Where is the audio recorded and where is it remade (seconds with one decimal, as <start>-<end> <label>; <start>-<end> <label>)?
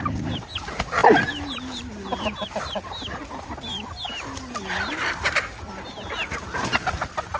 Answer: 0.0-7.4 recorded